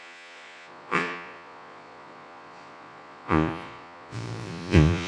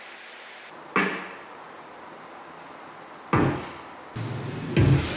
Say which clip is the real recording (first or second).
second